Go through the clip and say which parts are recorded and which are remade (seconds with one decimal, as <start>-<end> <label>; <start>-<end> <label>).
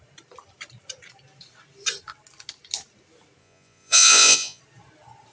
0.0-3.4 recorded; 3.4-4.6 remade; 4.6-5.3 recorded